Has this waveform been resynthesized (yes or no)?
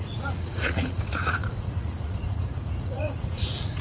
yes